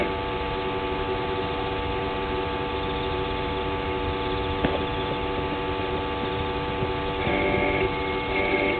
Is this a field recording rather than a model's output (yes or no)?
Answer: yes